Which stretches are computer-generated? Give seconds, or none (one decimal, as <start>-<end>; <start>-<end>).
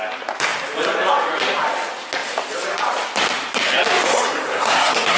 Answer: 4.1-5.2